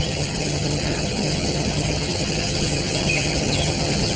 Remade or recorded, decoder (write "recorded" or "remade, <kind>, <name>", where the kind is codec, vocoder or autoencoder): remade, vocoder, HiFi-GAN